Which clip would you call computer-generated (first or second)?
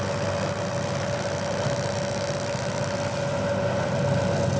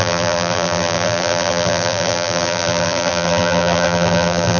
second